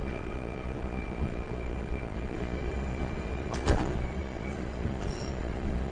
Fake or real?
fake